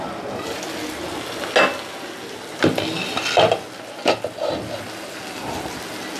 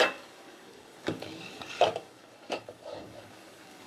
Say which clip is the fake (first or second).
second